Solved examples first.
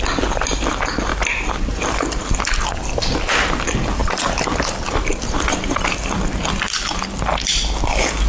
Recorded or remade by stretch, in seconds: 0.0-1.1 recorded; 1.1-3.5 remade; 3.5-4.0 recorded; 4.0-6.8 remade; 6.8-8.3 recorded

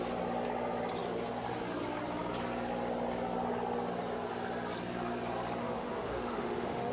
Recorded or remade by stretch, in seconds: 0.0-5.6 recorded; 5.6-6.9 remade

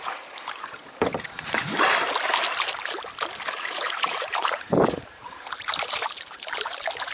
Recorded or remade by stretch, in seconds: 0.0-1.6 remade; 1.6-3.5 recorded; 3.5-7.1 remade